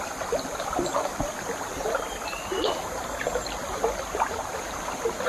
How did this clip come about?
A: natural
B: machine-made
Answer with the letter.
A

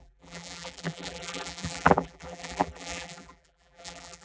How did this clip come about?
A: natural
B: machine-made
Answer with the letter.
B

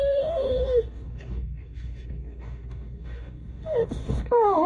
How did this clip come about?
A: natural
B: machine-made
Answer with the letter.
B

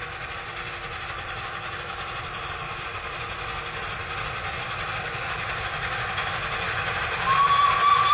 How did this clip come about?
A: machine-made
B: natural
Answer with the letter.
B